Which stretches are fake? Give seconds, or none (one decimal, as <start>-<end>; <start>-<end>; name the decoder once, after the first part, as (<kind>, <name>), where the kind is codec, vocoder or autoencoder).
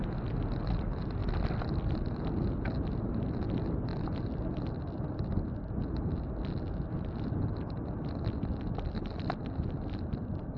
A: none